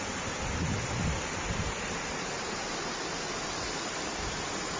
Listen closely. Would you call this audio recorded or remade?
recorded